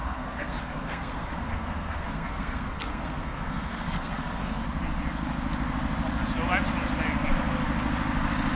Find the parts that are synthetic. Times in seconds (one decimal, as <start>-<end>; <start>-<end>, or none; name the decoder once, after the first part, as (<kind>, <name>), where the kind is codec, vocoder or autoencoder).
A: 0.0-4.6 (codec, SNAC)